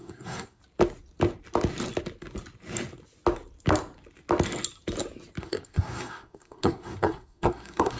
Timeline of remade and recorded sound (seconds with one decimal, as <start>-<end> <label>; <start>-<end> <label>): 0.0-0.6 remade; 0.6-5.4 recorded; 5.4-8.0 remade